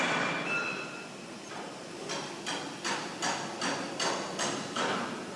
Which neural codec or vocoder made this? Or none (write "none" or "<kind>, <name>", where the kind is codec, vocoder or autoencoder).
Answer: none